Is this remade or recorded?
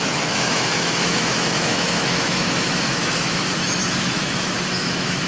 remade